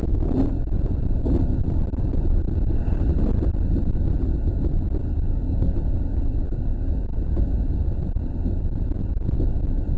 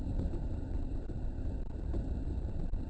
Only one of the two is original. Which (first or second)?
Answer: first